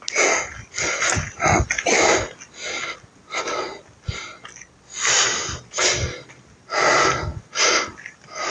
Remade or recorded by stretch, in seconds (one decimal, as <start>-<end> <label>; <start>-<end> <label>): 0.0-8.5 recorded